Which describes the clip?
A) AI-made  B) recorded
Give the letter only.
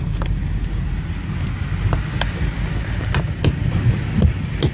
B